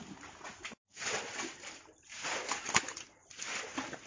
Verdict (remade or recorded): recorded